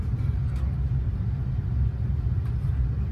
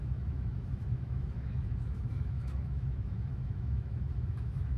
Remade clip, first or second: second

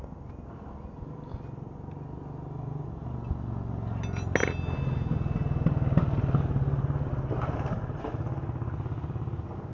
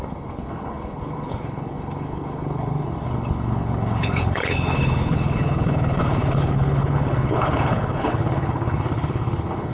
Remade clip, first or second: second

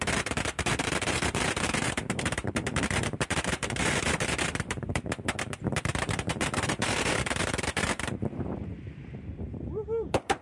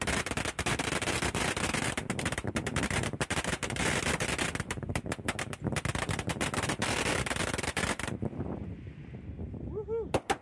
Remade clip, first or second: first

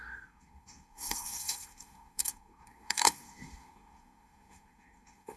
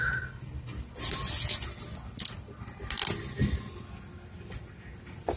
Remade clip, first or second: first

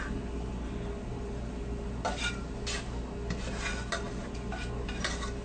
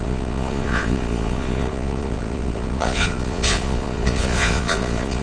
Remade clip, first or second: second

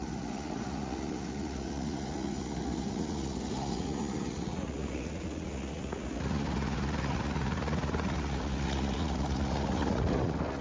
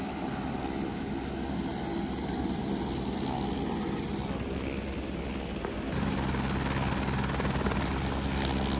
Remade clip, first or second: first